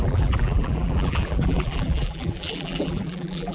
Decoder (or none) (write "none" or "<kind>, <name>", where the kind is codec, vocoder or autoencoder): vocoder, BigVGAN v2